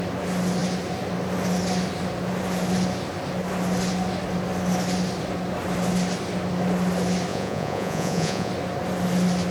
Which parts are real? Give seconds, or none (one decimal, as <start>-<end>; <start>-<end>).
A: 0.0-7.3; 8.5-9.5